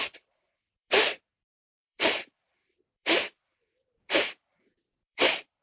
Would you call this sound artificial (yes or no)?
yes